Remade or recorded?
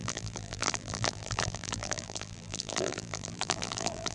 remade